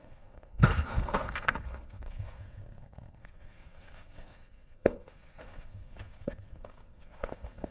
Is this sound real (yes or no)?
no